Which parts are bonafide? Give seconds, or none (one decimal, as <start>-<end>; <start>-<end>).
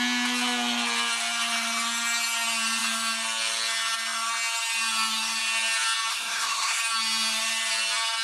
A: 0.0-6.1; 6.8-8.2